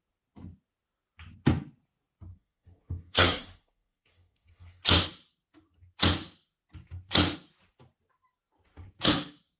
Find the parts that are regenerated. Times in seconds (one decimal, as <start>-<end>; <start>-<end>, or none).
2.3-4.8